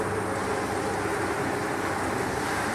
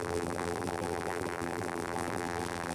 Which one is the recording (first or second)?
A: first